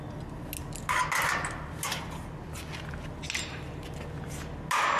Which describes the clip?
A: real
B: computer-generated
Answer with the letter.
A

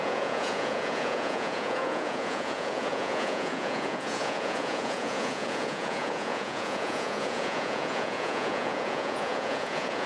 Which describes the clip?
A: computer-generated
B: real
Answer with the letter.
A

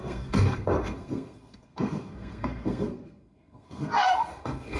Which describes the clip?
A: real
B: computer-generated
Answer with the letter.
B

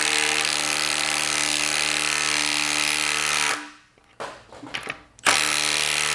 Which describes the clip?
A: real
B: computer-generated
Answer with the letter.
A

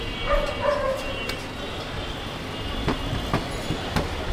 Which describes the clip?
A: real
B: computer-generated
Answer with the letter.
A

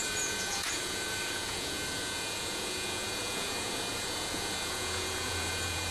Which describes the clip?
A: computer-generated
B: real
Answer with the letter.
A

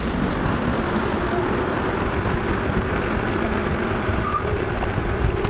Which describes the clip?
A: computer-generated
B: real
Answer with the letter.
B